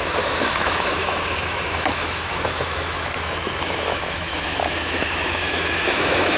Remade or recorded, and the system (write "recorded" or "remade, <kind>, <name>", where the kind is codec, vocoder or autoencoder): remade, autoencoder, DAC-VAE